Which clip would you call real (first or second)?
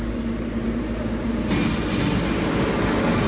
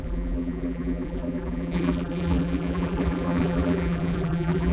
first